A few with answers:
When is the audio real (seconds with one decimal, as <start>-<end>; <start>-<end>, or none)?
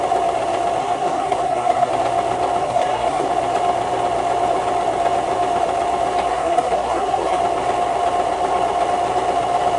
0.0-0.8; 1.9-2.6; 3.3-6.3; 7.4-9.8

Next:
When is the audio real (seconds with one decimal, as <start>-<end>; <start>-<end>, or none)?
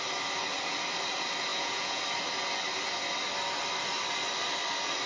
0.0-1.5; 2.0-5.1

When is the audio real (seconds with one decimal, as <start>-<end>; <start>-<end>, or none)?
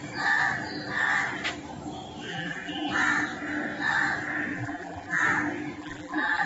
0.0-2.3; 2.9-4.5; 5.2-5.8